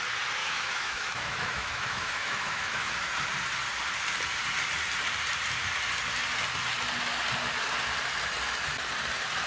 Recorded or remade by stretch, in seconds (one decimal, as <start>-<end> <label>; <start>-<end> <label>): 0.0-0.4 recorded; 0.4-2.9 remade; 2.9-9.5 recorded